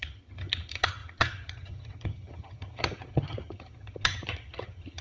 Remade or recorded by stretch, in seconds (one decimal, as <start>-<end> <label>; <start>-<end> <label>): 0.0-5.0 remade

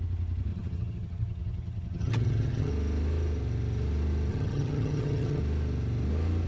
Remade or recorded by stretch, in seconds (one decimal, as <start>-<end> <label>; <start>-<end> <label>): 0.0-0.5 recorded; 0.5-2.7 remade; 2.7-4.3 recorded; 4.3-5.4 remade; 5.4-6.5 recorded

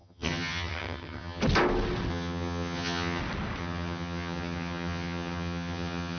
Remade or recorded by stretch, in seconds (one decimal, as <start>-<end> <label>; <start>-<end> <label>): 0.0-1.4 remade; 1.4-2.1 recorded; 2.1-3.2 remade; 3.2-3.6 recorded; 3.6-6.2 remade